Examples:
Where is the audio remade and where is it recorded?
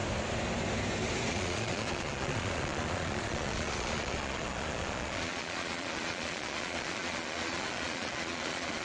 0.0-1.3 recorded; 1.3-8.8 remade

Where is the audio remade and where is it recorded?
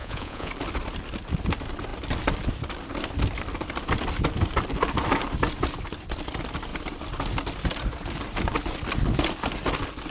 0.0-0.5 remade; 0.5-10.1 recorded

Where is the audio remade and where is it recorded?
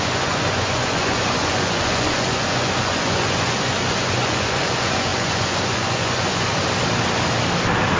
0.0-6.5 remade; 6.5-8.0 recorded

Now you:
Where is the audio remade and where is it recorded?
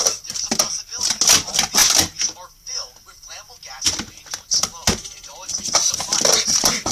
0.0-6.9 recorded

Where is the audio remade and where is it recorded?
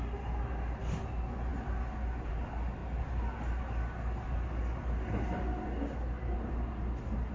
0.0-7.3 recorded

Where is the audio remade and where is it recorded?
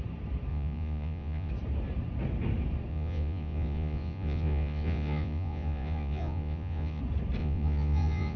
0.0-0.5 recorded; 0.5-1.5 remade; 1.5-2.9 recorded; 2.9-7.0 remade; 7.0-7.4 recorded; 7.4-8.4 remade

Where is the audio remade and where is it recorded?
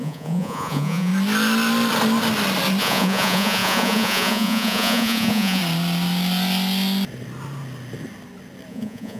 0.0-1.1 remade; 1.1-2.8 recorded; 2.8-5.6 remade; 5.6-8.7 recorded; 8.7-9.2 remade